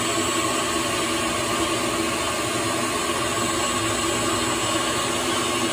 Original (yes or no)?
yes